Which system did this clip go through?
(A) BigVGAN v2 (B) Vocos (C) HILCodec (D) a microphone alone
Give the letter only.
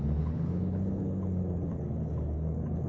C